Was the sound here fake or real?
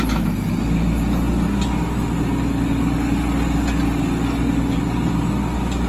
real